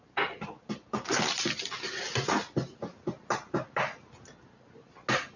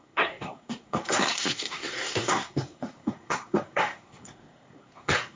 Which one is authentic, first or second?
first